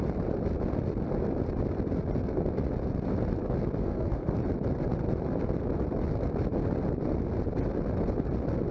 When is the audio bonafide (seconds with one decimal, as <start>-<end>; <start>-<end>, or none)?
0.0-3.8; 4.3-8.7

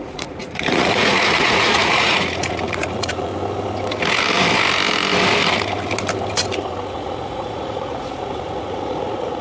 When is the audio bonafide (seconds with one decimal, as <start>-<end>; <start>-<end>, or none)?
3.3-6.9

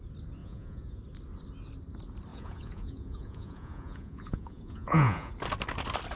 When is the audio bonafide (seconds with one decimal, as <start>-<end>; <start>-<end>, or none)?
0.0-0.4; 1.0-2.3; 5.3-6.2